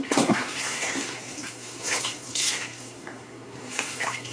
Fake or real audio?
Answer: fake